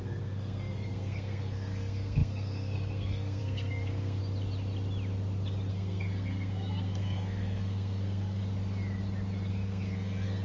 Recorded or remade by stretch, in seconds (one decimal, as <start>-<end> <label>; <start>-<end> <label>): 0.0-4.2 remade; 4.2-5.7 recorded; 5.7-8.4 remade; 8.4-9.5 recorded; 9.5-10.4 remade